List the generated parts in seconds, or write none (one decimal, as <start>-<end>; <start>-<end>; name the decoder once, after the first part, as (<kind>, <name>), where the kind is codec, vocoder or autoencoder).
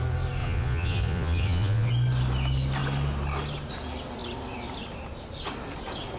0.4-1.9 (vocoder, Vocos)